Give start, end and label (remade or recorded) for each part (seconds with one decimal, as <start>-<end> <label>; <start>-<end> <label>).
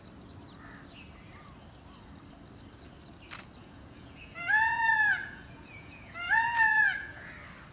0.0-3.6 recorded; 3.6-7.3 remade; 7.3-7.7 recorded